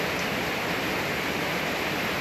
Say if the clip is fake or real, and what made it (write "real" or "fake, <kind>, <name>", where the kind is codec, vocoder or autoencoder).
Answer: real